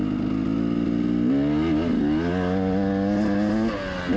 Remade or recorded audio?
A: recorded